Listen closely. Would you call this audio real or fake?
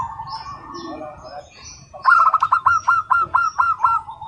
fake